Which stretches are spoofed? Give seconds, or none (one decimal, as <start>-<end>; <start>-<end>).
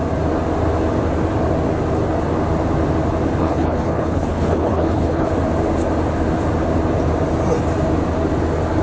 3.4-5.3